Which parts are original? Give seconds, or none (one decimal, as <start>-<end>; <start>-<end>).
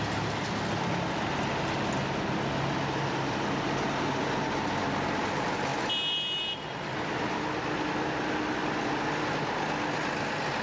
0.0-10.6